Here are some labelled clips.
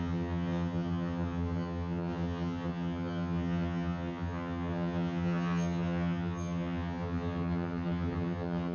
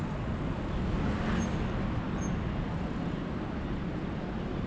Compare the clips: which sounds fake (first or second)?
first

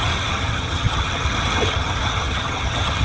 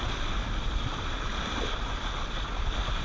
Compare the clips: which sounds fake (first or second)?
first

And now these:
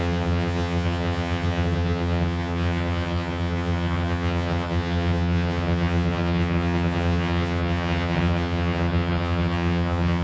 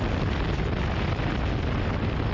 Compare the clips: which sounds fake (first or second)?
first